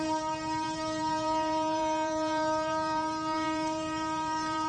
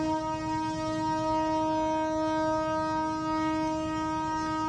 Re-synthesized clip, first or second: first